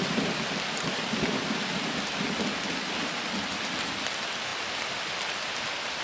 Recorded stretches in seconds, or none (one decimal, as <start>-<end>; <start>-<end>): 0.0-4.5; 5.6-6.0